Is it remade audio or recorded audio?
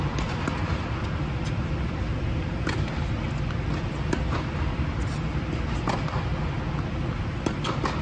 recorded